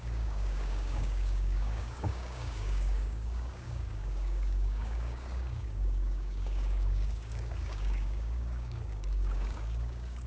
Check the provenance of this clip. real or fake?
fake